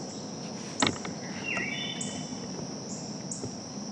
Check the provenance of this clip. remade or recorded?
recorded